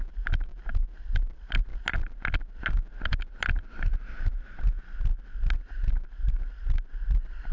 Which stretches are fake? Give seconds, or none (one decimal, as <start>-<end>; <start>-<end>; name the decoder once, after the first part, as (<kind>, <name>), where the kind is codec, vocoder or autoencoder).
none